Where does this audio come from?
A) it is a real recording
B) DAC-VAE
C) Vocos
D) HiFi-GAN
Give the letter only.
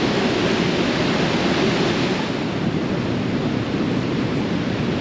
A